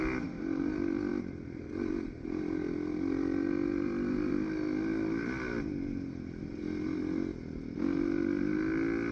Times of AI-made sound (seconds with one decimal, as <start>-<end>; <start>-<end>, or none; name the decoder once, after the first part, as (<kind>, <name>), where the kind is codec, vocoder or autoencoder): none